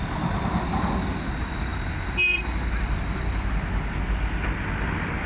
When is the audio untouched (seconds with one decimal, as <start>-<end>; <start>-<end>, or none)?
0.0-5.3